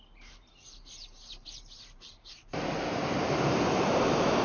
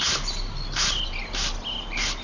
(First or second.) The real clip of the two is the second